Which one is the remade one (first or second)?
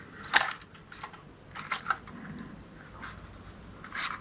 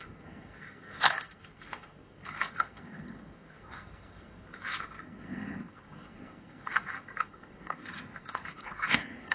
second